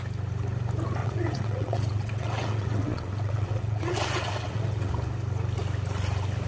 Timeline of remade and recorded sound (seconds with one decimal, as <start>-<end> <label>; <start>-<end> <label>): 0.0-1.0 recorded; 1.0-4.9 remade; 4.9-6.5 recorded

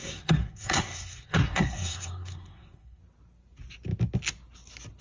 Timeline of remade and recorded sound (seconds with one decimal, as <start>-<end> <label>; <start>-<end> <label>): 0.0-3.0 remade; 3.0-5.0 recorded

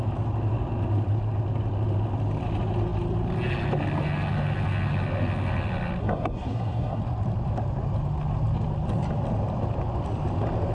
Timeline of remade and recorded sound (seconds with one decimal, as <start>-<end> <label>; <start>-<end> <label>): 0.0-6.0 recorded; 6.0-7.0 remade; 7.0-10.7 recorded